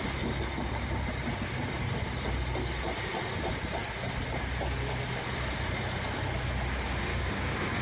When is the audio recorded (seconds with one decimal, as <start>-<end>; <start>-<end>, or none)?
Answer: 0.0-7.1